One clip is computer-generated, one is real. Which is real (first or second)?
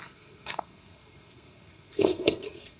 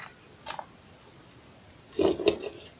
second